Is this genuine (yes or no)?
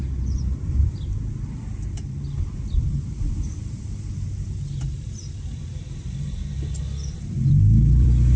no